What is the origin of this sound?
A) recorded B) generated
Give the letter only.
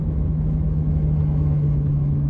B